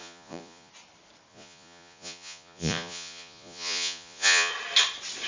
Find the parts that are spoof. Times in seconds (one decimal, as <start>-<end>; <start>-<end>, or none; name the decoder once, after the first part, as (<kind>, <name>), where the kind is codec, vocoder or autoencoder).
0.0-0.7 (vocoder, Vocos); 1.3-4.5